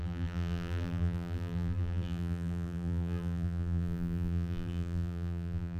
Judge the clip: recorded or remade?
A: remade